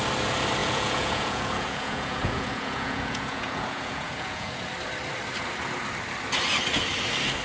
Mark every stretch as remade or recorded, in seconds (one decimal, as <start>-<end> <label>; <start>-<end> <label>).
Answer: 0.0-0.6 recorded; 0.6-4.7 remade; 4.7-7.4 recorded

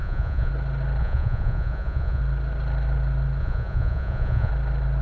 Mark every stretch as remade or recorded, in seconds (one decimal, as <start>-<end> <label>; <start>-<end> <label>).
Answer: 0.0-0.5 remade; 0.5-1.0 recorded; 1.0-2.2 remade; 2.2-3.4 recorded; 3.4-4.5 remade; 4.5-5.0 recorded